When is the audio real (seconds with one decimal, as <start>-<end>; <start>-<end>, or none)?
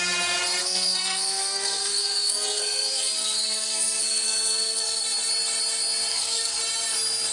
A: 0.0-0.6; 5.0-6.1; 6.6-7.3